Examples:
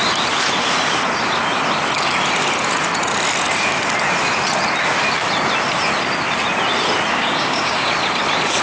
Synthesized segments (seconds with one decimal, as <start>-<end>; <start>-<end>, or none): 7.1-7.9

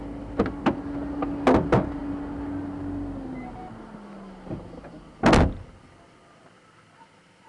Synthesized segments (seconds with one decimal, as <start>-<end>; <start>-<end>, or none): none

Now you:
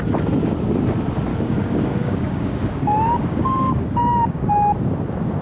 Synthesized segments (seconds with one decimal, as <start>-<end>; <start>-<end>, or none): 1.3-4.5

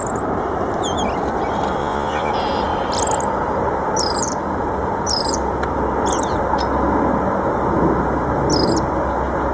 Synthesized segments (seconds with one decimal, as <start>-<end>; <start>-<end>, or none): 1.8-2.3

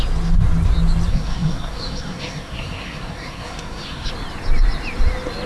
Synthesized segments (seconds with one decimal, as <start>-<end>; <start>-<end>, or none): 1.1-4.1

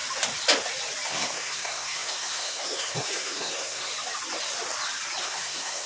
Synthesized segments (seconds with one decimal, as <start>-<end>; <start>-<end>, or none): 1.1-3.9; 5.2-5.9

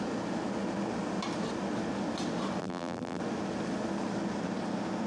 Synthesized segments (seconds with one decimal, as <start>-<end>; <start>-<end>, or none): 2.6-3.2

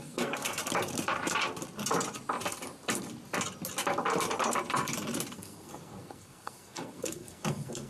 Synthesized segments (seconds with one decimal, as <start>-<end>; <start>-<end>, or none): 0.0-0.6; 5.3-7.9